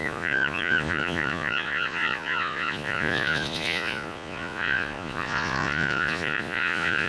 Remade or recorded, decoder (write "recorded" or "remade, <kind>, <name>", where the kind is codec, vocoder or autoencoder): remade, vocoder, Vocos